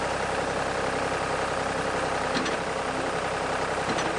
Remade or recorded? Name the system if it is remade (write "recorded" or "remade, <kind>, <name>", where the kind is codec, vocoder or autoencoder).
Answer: remade, vocoder, BigVGAN v2